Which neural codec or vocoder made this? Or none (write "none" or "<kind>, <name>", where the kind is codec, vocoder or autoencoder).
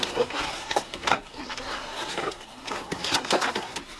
codec, SNAC